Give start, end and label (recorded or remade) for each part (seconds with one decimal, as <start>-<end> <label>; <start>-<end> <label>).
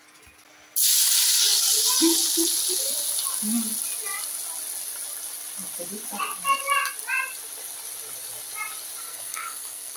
0.0-9.0 recorded; 9.0-10.0 remade